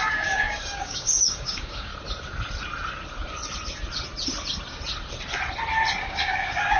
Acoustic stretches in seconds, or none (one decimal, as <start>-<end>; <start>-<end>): 1.9-6.0